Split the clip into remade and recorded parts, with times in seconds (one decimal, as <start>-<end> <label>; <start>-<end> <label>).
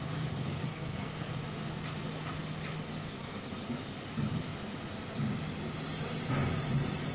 0.0-0.5 recorded; 0.5-1.3 remade; 1.3-2.9 recorded; 2.9-3.5 remade; 3.5-7.1 recorded